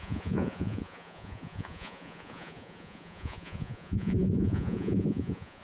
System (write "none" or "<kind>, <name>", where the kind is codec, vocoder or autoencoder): vocoder, Vocos